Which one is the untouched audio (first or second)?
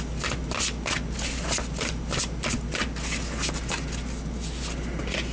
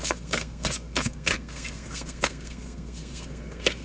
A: first